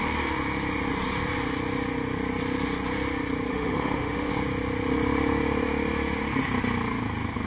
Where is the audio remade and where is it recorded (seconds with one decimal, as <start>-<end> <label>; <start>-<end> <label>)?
0.0-3.5 recorded; 3.5-4.3 remade; 4.3-7.5 recorded